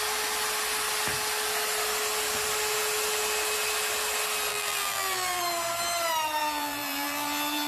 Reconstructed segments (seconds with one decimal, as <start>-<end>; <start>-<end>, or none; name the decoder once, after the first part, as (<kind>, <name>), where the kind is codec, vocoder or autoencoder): 4.5-5.4 (vocoder, BigVGAN v2); 6.4-7.7